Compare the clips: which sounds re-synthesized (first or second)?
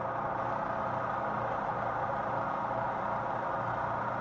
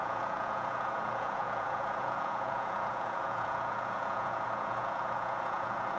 second